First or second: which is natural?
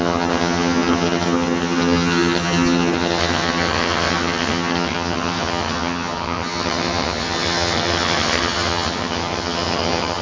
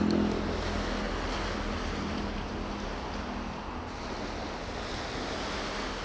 second